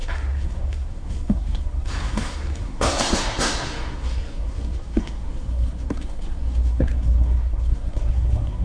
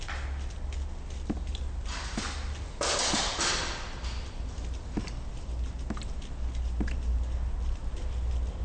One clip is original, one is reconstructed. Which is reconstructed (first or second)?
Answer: first